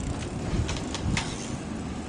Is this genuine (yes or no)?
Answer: yes